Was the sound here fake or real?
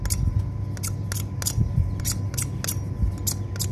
real